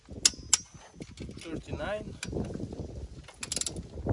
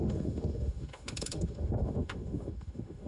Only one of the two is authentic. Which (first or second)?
first